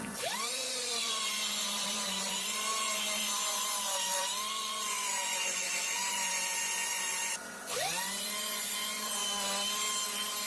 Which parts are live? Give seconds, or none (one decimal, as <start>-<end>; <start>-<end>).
9.2-10.5